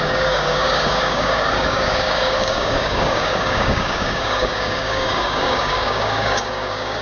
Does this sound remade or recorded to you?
remade